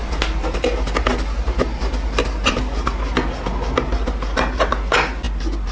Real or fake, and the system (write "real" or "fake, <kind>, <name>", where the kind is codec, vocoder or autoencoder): real